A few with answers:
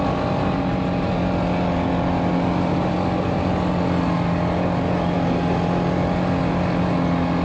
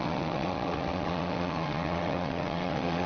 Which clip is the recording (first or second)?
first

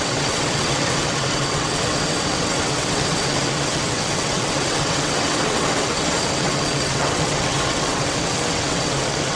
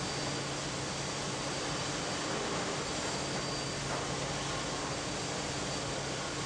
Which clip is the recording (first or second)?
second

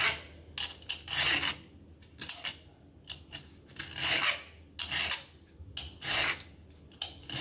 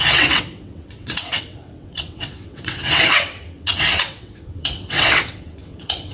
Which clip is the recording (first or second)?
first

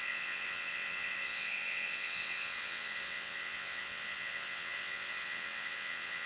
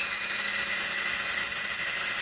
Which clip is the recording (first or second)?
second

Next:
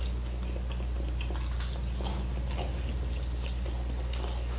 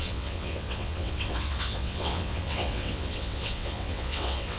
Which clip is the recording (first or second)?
first